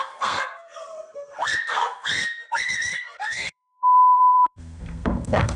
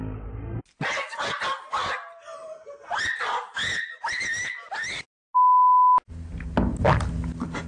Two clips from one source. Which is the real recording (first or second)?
second